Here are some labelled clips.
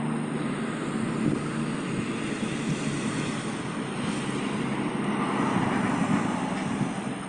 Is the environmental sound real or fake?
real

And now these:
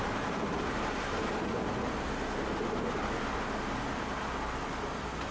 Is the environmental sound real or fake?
real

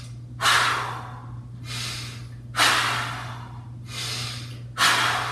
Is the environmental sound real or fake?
real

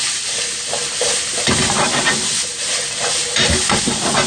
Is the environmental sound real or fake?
real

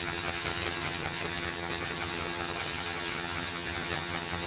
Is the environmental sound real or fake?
fake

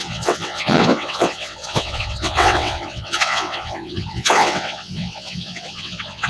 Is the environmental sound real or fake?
fake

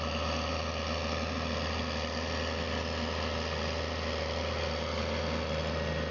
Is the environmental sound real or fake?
real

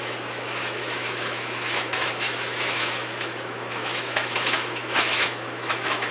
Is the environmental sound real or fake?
fake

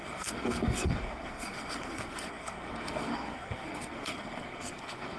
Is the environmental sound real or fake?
fake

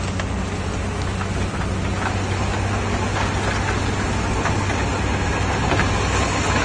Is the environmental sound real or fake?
real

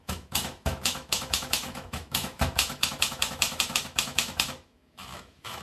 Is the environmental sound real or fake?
fake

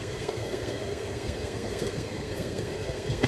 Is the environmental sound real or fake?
fake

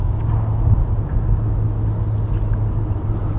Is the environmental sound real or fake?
real